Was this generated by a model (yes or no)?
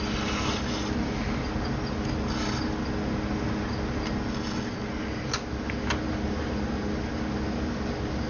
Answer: no